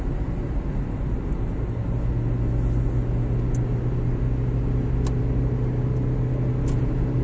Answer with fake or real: real